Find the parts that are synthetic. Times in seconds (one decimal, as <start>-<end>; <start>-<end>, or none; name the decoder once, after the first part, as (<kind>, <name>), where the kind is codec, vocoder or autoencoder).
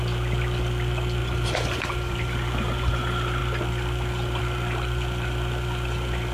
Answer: 1.2-2.9 (vocoder, BigVGAN v2)